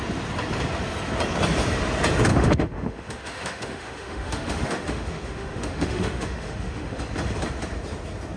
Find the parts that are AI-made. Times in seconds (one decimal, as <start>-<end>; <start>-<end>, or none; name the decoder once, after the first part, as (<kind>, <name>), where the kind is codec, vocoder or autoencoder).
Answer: 2.3-7.0 (autoencoder, DAC-VAE)